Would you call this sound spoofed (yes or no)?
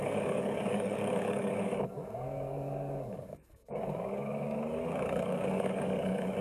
yes